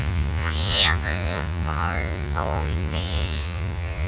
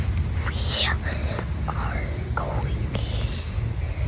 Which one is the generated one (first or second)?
first